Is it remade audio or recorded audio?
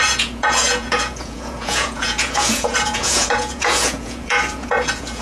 remade